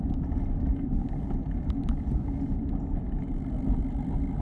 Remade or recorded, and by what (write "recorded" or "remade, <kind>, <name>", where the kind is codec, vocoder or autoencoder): recorded